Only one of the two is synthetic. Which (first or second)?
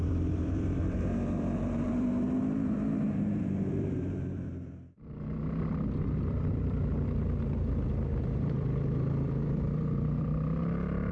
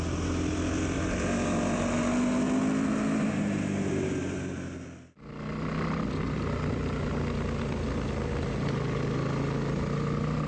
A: first